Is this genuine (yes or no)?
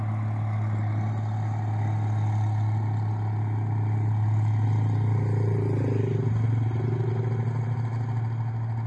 yes